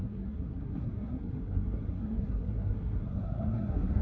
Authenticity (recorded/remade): remade